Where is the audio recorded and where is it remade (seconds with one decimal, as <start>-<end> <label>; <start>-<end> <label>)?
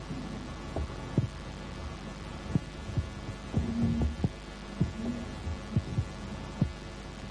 0.0-7.3 recorded